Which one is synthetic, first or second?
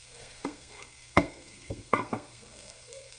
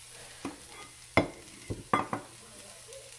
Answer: first